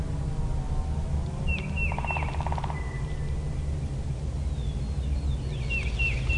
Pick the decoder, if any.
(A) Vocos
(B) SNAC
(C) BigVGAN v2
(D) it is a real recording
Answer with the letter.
D